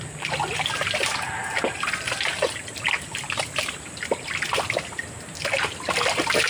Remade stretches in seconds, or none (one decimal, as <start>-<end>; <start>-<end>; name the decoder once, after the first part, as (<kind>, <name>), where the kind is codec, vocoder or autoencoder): none